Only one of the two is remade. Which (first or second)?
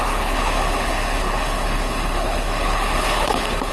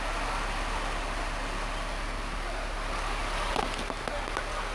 first